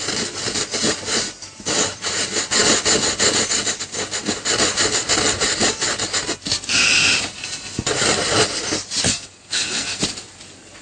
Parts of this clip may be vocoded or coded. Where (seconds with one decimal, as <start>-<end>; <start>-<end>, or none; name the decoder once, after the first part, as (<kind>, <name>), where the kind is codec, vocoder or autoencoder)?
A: 9.1-10.0 (codec, SNAC)